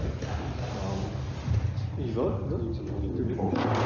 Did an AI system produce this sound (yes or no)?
no